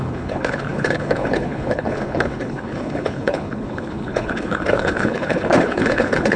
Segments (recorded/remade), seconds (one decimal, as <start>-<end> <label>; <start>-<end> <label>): 0.0-6.4 remade